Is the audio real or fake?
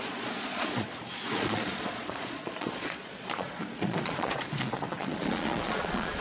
fake